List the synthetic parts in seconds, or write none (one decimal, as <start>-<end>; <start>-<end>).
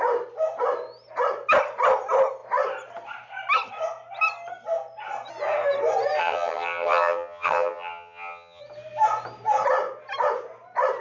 6.2-8.6